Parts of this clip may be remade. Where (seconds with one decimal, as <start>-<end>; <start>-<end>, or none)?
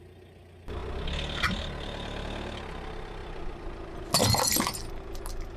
none